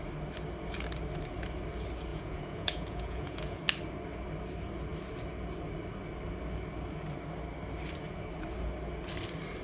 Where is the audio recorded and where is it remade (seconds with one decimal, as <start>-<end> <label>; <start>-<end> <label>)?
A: 0.0-2.1 recorded; 2.1-3.6 remade; 3.6-9.6 recorded